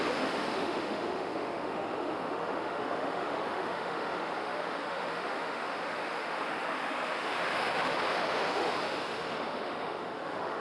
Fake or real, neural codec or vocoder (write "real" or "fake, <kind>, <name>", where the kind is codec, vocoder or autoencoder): fake, autoencoder, DAC-VAE